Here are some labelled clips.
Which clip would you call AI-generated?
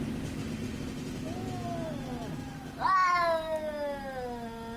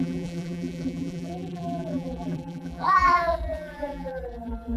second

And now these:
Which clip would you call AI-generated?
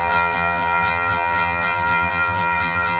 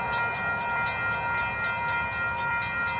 first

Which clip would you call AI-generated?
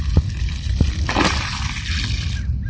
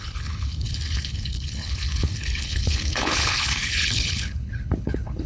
second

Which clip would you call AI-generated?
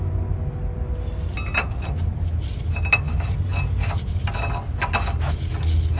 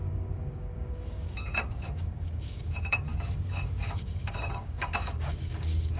second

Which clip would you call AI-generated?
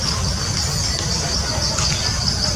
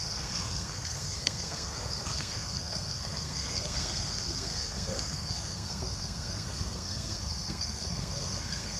second